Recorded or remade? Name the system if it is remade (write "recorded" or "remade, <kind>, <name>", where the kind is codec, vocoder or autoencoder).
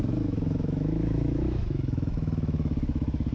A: remade, autoencoder, DAC-VAE